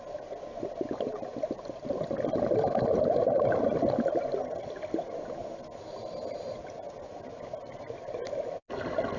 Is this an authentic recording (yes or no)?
yes